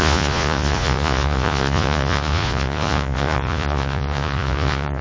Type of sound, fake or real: fake